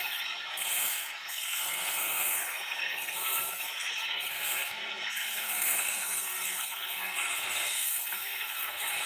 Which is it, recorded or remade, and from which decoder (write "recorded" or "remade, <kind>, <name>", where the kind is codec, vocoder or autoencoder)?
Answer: remade, codec, SNAC